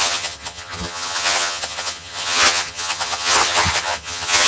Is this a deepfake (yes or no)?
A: yes